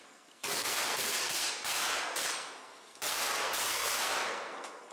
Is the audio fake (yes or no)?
yes